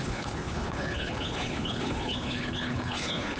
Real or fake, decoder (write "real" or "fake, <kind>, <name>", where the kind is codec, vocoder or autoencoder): fake, codec, HILCodec